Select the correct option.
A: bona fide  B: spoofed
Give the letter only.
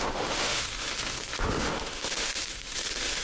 B